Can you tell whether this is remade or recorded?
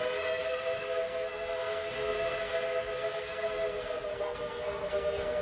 remade